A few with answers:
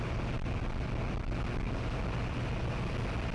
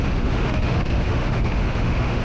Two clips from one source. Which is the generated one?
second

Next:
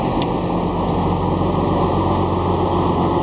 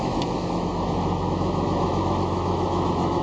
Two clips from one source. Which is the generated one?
second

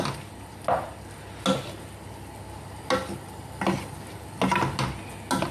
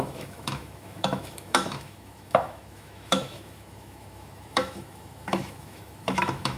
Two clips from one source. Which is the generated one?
second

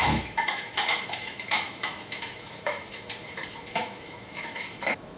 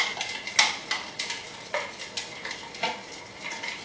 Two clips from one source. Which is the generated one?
first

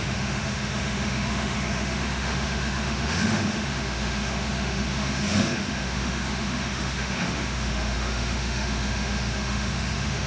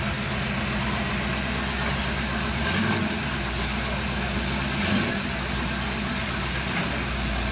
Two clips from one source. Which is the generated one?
first